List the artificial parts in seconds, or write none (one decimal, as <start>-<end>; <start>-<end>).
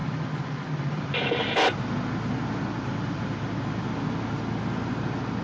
0.0-1.3